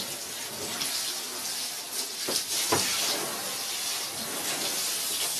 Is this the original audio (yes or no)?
yes